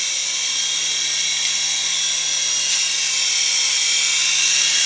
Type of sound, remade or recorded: recorded